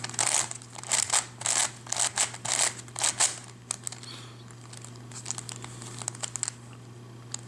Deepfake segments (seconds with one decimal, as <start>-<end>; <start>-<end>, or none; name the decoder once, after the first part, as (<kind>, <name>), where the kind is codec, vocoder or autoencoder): none